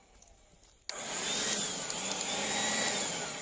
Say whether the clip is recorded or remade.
recorded